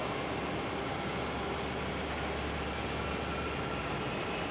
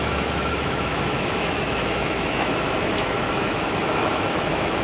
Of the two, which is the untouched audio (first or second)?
first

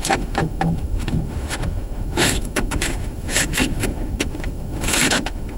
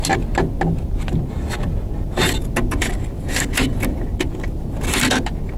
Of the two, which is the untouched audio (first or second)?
second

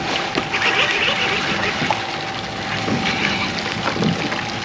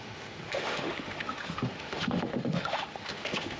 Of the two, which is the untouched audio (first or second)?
first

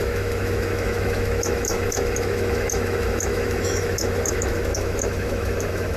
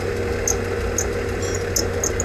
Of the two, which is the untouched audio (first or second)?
second